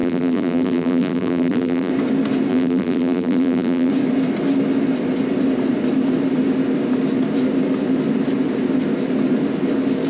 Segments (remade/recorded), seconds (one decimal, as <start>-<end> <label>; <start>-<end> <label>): 0.0-1.9 remade; 1.9-2.5 recorded; 2.5-3.9 remade; 3.9-10.1 recorded